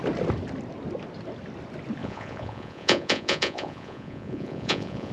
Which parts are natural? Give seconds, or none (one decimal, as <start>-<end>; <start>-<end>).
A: 0.0-2.0